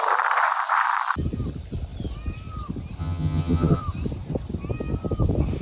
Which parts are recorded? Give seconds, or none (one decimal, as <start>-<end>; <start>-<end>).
0.0-3.0; 3.8-5.6

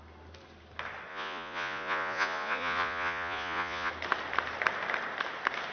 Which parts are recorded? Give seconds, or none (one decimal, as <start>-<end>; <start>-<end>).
0.0-1.1; 3.9-5.7

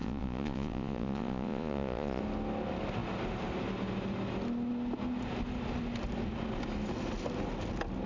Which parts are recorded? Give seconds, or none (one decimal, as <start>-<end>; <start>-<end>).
2.2-8.1

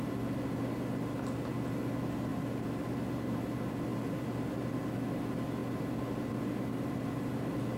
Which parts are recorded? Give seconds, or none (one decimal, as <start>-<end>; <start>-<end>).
0.0-2.3; 3.1-7.8

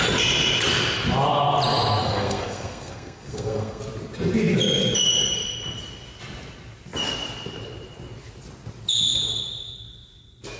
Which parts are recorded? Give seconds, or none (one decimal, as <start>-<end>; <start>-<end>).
0.0-2.0; 3.8-10.6

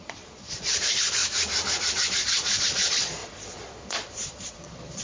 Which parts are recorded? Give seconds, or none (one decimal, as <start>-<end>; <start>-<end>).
1.2-2.1